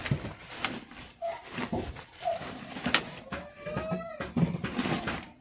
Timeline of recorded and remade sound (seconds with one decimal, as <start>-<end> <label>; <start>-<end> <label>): 0.0-5.4 recorded